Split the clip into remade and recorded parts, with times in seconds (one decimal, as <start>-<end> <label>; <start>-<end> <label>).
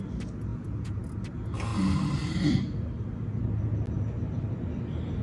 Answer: 0.0-0.5 recorded; 0.5-1.0 remade; 1.0-5.2 recorded